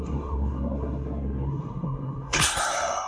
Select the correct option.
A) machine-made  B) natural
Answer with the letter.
A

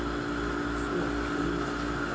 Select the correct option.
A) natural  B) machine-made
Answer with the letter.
A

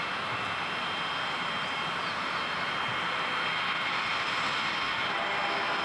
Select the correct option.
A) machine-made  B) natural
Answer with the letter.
B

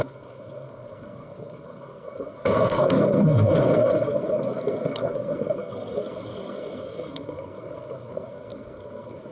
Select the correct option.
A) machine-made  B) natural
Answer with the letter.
A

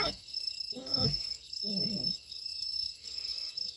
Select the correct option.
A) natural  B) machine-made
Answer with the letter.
B